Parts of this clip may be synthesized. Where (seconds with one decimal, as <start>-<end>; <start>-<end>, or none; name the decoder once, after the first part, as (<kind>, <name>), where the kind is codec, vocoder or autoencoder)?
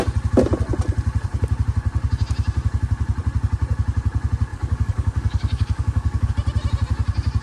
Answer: 4.5-6.3 (codec, DAC)